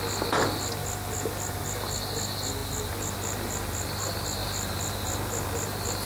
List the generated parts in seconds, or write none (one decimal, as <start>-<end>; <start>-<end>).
none

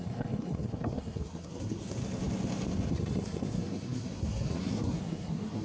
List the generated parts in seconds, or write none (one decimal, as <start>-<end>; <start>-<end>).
0.0-2.0; 2.9-5.6

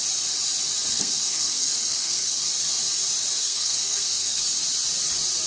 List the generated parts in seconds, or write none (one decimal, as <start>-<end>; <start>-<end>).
0.9-2.4; 3.4-4.4

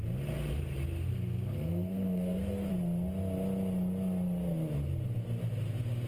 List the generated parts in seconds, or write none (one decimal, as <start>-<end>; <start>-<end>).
1.1-2.7

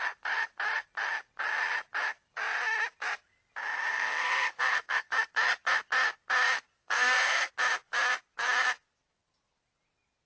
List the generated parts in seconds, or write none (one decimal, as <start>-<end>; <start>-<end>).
3.9-5.1; 6.8-7.5